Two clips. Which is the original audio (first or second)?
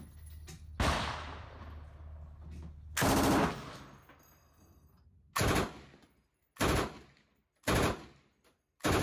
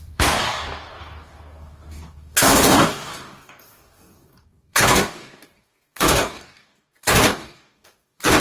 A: first